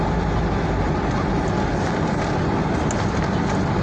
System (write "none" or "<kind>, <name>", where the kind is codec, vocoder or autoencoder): none